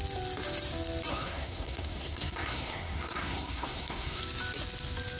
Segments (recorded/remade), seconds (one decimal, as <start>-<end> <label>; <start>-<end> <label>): 0.0-1.1 recorded; 1.1-4.2 remade; 4.2-5.2 recorded